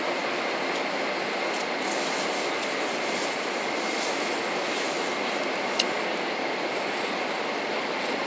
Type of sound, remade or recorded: recorded